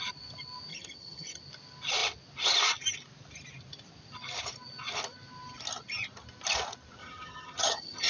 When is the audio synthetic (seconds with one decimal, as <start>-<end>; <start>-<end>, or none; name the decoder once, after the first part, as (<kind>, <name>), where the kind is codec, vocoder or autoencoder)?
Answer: 0.7-1.4 (vocoder, HiFi-GAN); 7.0-8.1